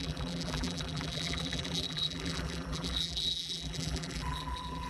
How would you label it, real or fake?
fake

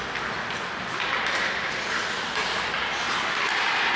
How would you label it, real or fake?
real